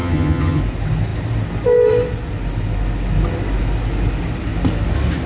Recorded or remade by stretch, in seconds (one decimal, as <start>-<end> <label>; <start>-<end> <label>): 0.0-0.6 remade; 0.6-5.3 recorded